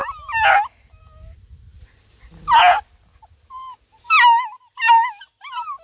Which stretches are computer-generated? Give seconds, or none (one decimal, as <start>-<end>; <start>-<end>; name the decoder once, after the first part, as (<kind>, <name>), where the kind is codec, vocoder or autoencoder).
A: none